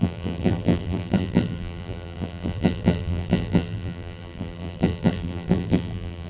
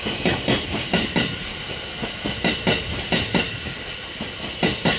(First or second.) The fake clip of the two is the first